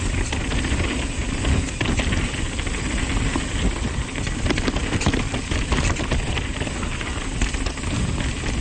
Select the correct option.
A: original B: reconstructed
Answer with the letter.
A